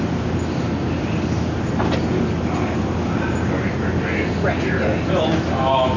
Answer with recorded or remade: recorded